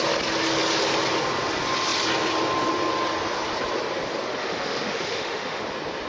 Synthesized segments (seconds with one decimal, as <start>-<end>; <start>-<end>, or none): 4.4-5.6